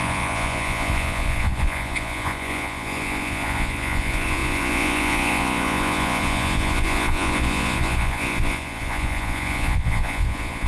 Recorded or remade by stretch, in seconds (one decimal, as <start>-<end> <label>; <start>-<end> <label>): 0.0-10.7 remade